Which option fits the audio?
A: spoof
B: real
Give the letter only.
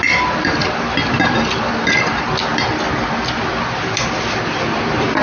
A